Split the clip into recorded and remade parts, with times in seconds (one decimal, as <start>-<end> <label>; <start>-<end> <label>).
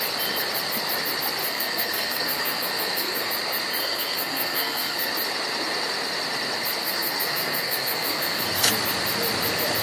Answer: 0.0-1.4 recorded; 1.4-3.3 remade; 3.3-3.8 recorded; 3.8-5.1 remade; 5.1-6.8 recorded; 6.8-8.7 remade; 8.7-9.8 recorded